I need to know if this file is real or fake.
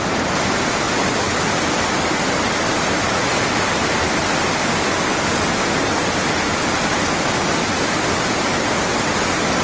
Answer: real